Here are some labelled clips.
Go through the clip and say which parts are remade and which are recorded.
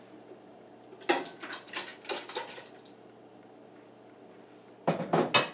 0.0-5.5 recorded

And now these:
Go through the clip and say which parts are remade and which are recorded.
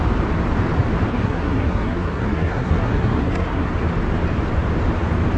0.0-1.1 recorded; 1.1-3.7 remade; 3.7-5.4 recorded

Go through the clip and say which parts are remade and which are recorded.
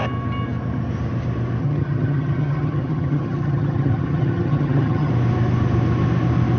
0.0-1.6 recorded; 1.6-5.1 remade; 5.1-6.6 recorded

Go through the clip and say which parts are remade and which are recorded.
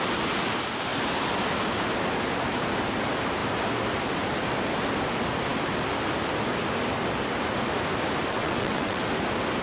0.0-8.3 recorded; 8.3-9.0 remade; 9.0-9.6 recorded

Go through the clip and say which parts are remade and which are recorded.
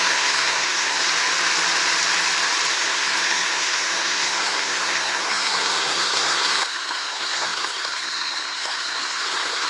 0.0-1.1 remade; 1.1-2.7 recorded; 2.7-9.7 remade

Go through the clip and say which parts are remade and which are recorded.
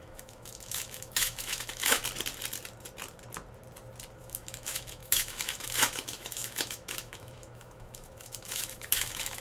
0.0-2.0 remade; 2.0-4.2 recorded; 4.2-9.4 remade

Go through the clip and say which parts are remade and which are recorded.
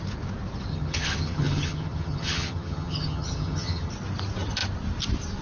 0.0-0.7 recorded; 0.7-3.9 remade; 3.9-5.4 recorded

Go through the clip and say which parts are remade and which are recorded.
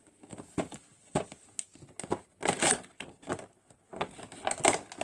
0.0-5.0 recorded